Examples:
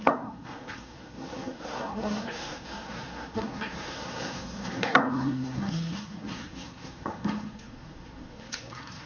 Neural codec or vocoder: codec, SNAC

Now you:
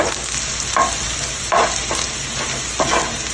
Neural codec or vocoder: none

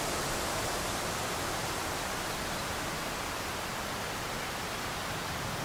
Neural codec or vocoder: none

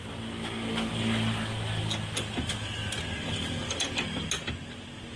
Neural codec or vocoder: none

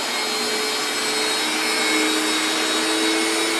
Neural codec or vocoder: none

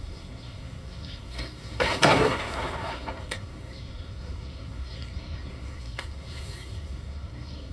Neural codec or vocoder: codec, SNAC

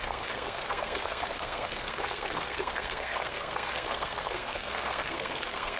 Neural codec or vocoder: codec, SNAC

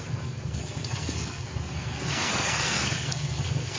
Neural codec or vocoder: codec, SNAC